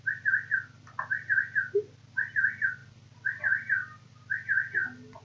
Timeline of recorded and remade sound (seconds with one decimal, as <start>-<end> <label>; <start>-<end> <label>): 0.0-5.2 recorded